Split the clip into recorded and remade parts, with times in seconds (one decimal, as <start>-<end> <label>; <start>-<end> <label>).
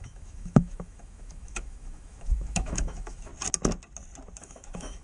0.0-3.3 remade; 3.3-4.4 recorded; 4.4-5.0 remade